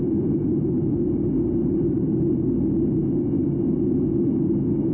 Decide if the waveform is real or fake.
real